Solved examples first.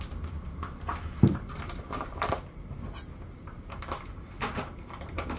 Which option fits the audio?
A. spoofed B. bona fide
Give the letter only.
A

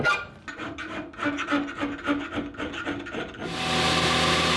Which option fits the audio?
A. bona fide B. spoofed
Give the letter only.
A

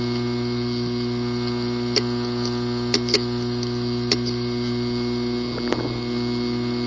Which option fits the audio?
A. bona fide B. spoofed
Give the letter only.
A